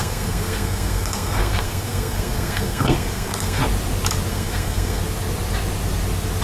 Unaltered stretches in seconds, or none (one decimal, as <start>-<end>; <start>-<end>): 3.6-4.3; 5.0-6.4